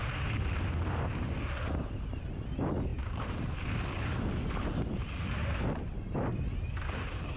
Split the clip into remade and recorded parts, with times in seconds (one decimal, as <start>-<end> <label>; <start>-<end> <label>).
0.0-7.4 recorded